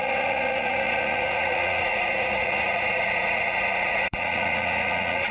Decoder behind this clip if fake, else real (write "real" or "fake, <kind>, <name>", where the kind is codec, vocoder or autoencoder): fake, vocoder, Vocos